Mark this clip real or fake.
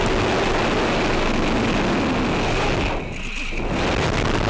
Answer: real